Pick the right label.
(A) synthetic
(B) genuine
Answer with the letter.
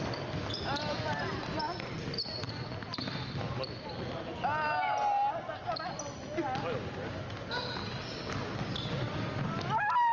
B